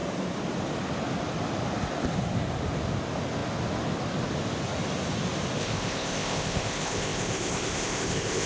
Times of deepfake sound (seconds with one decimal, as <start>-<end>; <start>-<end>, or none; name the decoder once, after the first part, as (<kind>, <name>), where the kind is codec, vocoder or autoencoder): 5.6-8.5 (codec, ZipCodec)